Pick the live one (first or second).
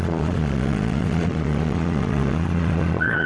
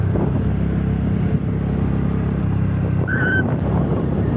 second